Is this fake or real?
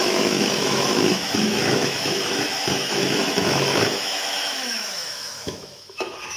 fake